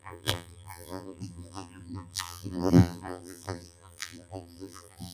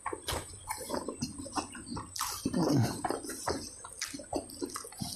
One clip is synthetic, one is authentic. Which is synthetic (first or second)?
first